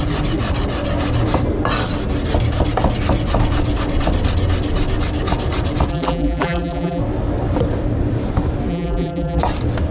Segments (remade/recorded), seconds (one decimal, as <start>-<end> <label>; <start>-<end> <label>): 0.0-5.9 recorded; 5.9-7.0 remade; 7.0-8.7 recorded; 8.7-9.4 remade; 9.4-9.9 recorded